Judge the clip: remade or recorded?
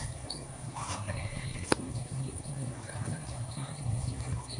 remade